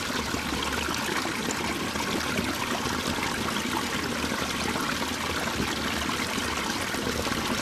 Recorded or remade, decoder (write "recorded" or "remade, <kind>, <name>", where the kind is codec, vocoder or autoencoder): recorded